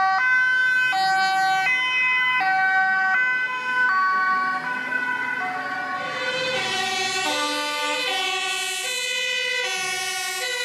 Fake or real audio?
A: real